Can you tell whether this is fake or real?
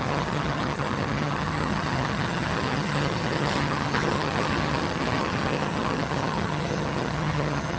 fake